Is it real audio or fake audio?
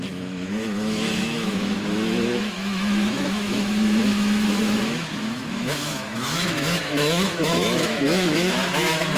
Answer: fake